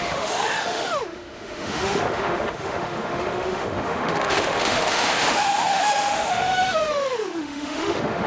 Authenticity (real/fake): fake